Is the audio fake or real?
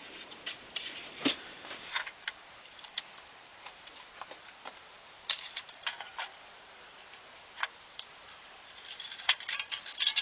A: fake